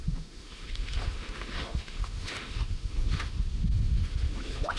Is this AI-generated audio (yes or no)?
yes